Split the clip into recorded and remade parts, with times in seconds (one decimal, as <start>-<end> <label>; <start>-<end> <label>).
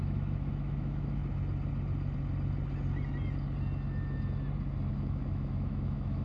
0.0-1.2 remade; 1.2-4.9 recorded; 4.9-6.2 remade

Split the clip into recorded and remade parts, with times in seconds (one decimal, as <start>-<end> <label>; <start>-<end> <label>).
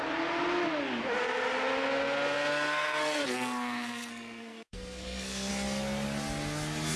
0.0-2.5 recorded; 2.5-5.5 remade; 5.5-7.0 recorded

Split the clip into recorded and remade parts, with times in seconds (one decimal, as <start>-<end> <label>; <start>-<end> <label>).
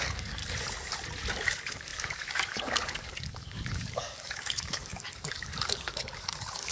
0.0-0.4 remade; 0.4-1.3 recorded; 1.3-6.7 remade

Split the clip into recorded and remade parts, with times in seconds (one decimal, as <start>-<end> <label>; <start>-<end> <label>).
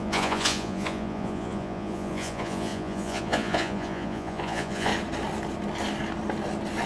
0.0-4.9 remade; 4.9-6.9 recorded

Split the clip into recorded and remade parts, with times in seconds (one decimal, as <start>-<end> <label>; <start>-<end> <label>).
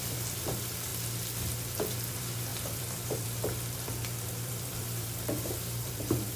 0.0-0.9 remade; 0.9-2.1 recorded; 2.1-6.4 remade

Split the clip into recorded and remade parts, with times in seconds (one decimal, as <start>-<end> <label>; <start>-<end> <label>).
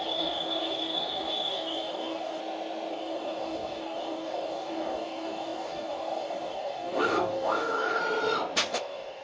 0.0-2.4 remade; 2.4-2.9 recorded; 2.9-8.0 remade; 8.0-8.7 recorded; 8.7-9.2 remade